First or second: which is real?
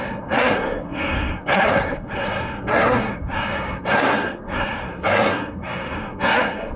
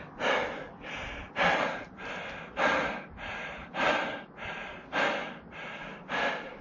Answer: second